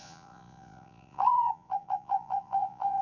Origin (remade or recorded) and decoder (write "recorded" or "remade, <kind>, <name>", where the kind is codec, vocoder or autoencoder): remade, vocoder, Vocos